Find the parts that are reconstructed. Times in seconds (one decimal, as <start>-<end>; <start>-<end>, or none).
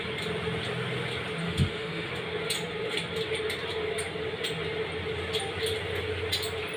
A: 1.4-2.1